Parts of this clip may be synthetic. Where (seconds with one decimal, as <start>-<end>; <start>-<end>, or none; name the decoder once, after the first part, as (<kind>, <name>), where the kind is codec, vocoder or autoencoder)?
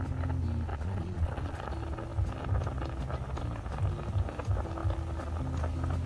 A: 0.7-1.7 (vocoder, Vocos)